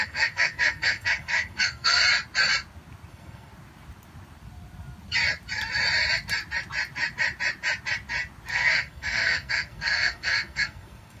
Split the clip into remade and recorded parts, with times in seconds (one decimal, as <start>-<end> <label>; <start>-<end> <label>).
0.0-2.0 remade; 2.0-3.1 recorded; 3.1-3.5 remade; 3.5-8.5 recorded; 8.5-11.2 remade